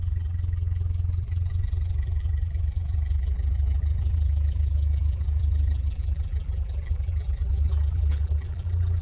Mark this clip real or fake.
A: fake